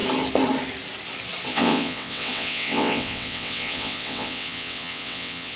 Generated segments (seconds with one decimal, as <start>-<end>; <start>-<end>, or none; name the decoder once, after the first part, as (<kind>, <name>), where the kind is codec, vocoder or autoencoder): 1.5-5.6 (vocoder, WaveNeXt)